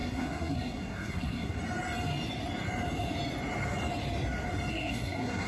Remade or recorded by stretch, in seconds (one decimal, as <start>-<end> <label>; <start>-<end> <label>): 0.0-1.6 remade; 1.6-4.7 recorded; 4.7-5.5 remade